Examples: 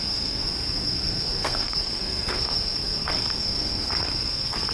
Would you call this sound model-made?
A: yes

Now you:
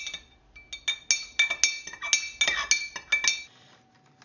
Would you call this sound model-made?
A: no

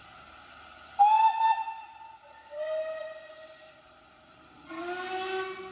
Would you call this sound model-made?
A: no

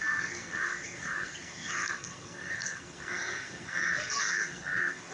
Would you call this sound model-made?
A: yes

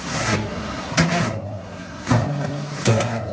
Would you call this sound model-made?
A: yes